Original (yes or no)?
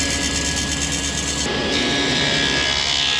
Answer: yes